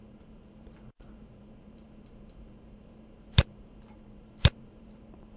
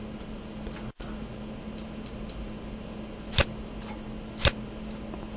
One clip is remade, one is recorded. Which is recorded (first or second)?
second